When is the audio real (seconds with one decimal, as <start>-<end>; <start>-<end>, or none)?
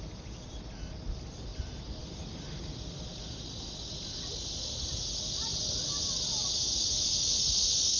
0.0-8.0